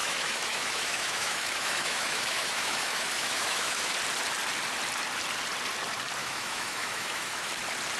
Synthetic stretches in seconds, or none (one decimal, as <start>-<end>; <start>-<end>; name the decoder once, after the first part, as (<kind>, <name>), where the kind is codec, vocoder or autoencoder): 0.0-3.9 (autoencoder, DAC-VAE); 6.2-7.5